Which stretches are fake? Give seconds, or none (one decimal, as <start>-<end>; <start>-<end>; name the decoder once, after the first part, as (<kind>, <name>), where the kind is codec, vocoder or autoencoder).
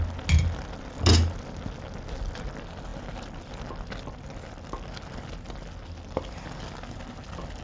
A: none